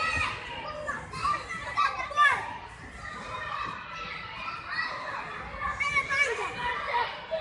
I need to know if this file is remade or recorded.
recorded